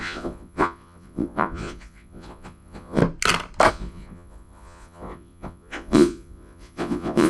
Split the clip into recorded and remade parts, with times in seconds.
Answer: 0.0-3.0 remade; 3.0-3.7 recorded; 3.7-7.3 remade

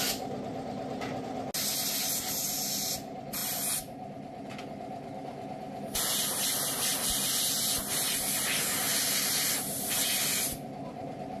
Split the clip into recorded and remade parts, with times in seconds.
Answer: 0.0-11.4 recorded

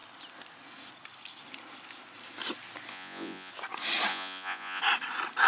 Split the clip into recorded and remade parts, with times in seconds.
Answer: 0.0-2.9 recorded; 2.9-3.5 remade; 3.5-4.1 recorded; 4.1-4.8 remade; 4.8-5.5 recorded

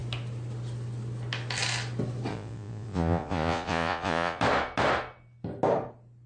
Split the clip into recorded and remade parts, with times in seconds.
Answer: 0.0-2.3 recorded; 2.3-4.4 remade; 4.4-6.3 recorded